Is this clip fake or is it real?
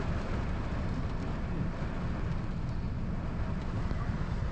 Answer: real